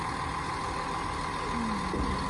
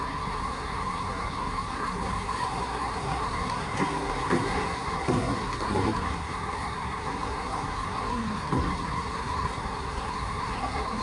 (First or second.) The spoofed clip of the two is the second